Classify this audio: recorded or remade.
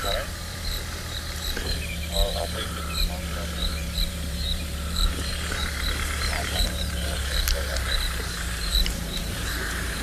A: remade